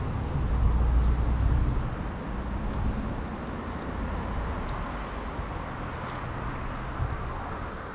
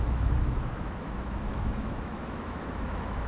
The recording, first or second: first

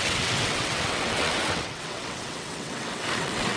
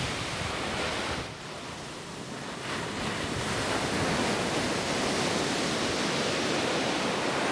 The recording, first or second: second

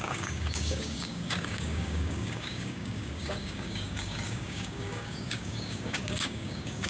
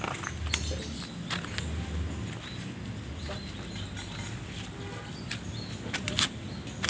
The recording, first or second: second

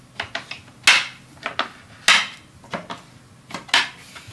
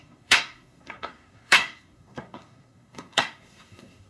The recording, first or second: first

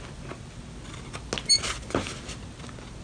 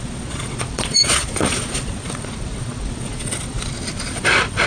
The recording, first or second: first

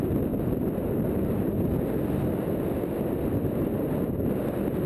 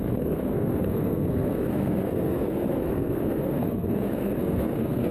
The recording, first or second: first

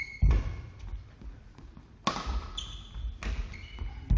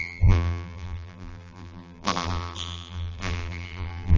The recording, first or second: first